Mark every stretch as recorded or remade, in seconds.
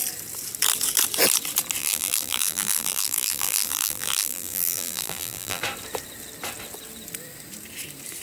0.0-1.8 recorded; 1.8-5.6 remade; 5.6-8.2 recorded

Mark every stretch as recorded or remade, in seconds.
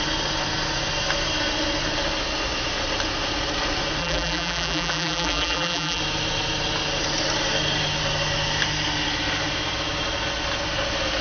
0.0-4.0 recorded; 4.0-6.0 remade; 6.0-11.2 recorded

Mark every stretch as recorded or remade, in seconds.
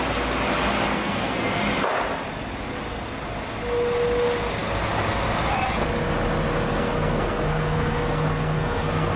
0.0-0.9 recorded; 0.9-1.6 remade; 1.6-6.7 recorded; 6.7-9.2 remade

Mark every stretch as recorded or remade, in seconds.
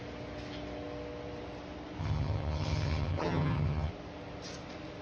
0.0-2.0 recorded; 2.0-3.9 remade; 3.9-5.0 recorded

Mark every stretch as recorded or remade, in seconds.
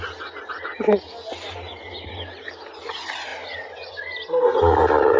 0.0-5.2 recorded